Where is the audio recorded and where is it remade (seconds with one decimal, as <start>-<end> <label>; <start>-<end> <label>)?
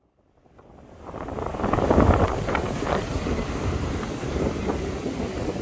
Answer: 0.0-1.5 recorded; 1.5-4.7 remade; 4.7-5.6 recorded